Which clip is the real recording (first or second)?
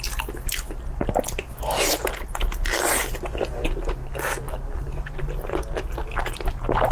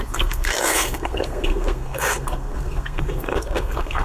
first